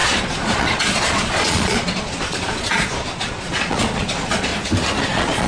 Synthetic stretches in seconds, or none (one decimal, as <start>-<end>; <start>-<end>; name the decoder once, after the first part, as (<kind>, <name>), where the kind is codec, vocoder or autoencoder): 0.0-4.5 (vocoder, Vocos); 5.0-5.5